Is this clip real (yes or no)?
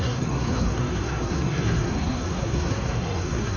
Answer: no